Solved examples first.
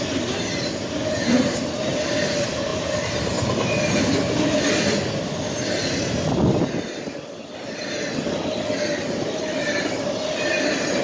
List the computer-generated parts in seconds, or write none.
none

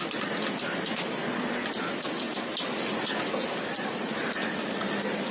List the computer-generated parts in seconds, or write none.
none

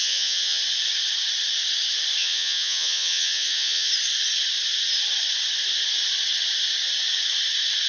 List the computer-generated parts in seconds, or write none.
0.0-0.6 (vocoder, Vocos); 2.2-3.9

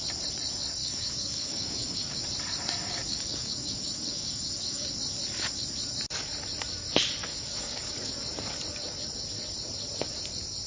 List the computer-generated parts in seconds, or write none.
0.8-2.2 (codec, DAC); 2.8-5.0; 7.3-7.9

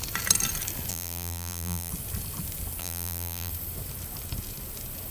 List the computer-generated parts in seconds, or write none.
0.9-1.9 (vocoder, BigVGAN v2); 2.8-3.5

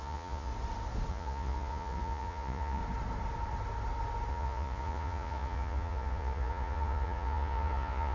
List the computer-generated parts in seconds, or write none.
0.0-0.5 (vocoder, Vocos); 1.1-2.8; 4.3-8.1

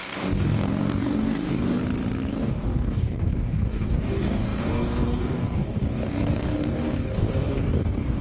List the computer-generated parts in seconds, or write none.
0.0-1.8 (codec, DAC); 2.3-8.2